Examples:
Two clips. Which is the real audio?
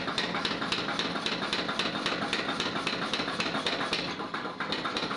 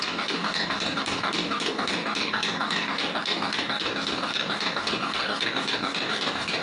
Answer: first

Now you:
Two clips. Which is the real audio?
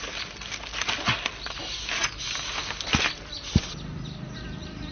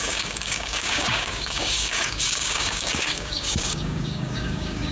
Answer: first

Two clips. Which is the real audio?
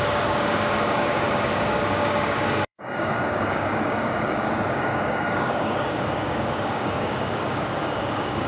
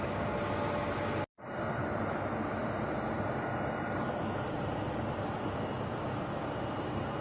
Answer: second